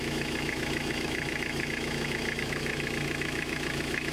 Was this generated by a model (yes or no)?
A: yes